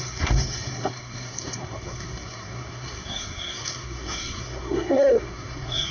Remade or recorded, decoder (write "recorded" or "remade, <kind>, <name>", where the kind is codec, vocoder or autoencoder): remade, codec, SNAC